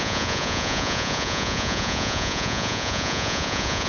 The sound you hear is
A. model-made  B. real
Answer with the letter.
A